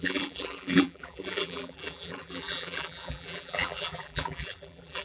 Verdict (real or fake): fake